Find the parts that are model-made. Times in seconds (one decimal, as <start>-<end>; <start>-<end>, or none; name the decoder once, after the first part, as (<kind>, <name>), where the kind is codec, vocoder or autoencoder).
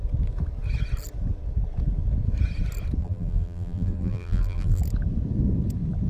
3.0-4.8 (vocoder, BigVGAN v2)